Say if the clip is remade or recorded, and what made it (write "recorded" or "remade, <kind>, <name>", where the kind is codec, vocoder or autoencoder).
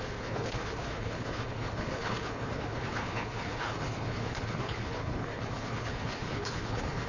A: remade, codec, HILCodec